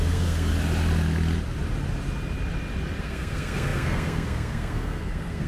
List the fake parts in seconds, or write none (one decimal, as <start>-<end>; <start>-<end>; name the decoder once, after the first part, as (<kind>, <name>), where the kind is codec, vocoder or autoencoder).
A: 0.0-0.5 (codec, SNAC); 3.0-5.5